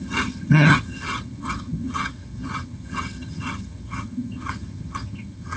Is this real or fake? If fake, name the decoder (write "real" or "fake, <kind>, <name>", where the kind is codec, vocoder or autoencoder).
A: fake, vocoder, HiFi-GAN